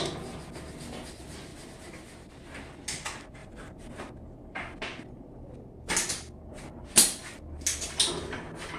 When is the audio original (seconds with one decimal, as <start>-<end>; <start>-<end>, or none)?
0.0-3.4; 4.0-8.8